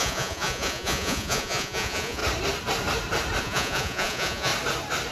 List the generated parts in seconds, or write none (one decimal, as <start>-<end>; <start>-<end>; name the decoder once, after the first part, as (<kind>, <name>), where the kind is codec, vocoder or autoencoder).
0.0-2.2 (vocoder, Vocos); 3.4-4.5